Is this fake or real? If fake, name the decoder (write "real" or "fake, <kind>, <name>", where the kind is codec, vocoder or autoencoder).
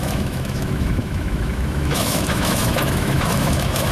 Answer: fake, autoencoder, DAC-VAE